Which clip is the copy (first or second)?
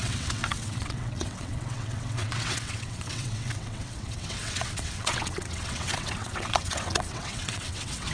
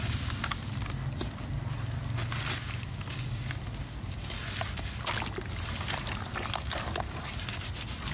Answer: first